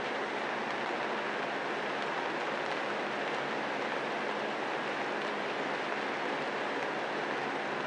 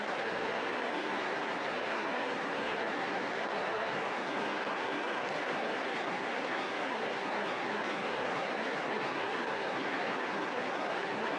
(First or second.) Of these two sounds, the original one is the first